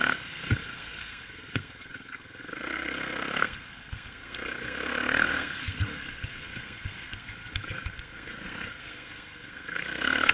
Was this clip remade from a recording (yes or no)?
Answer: yes